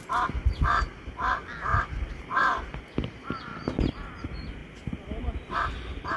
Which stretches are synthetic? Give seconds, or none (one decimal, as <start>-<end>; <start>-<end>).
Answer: 1.7-2.4; 3.5-4.1